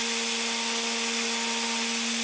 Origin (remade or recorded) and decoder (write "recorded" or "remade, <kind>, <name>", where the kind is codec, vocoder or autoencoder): recorded